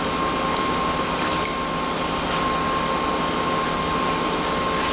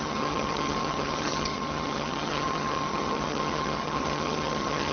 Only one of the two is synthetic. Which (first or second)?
second